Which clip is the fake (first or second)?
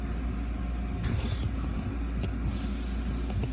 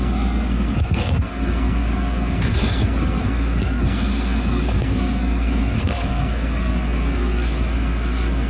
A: second